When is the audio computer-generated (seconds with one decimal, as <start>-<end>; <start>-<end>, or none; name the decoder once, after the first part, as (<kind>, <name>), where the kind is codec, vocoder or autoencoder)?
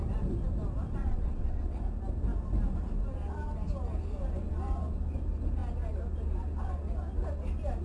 1.0-1.8 (vocoder, WaveNeXt)